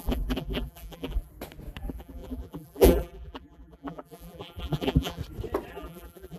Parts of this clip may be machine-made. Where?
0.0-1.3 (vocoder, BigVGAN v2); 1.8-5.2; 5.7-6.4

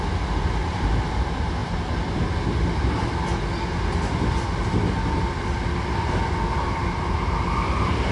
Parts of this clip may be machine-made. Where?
0.6-1.2 (vocoder, BigVGAN v2); 6.8-8.1